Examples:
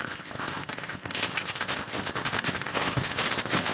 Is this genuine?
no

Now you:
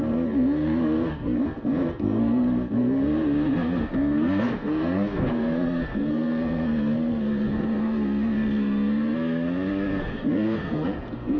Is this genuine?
no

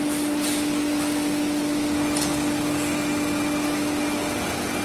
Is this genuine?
yes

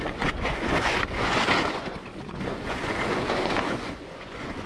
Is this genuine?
no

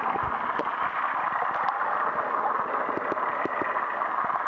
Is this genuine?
yes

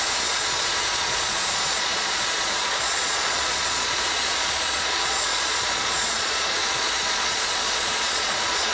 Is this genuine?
no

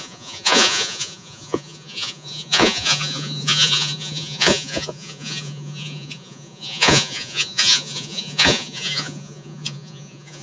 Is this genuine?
no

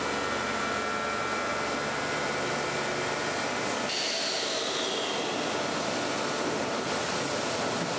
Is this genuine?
yes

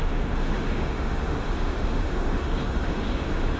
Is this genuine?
no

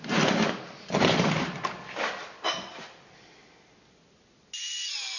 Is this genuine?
yes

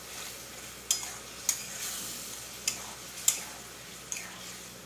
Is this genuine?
yes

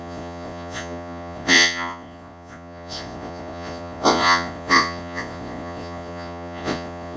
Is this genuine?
no